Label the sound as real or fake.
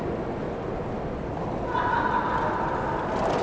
real